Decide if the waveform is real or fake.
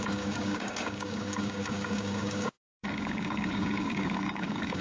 fake